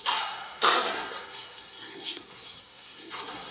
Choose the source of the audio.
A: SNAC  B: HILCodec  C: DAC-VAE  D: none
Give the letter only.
A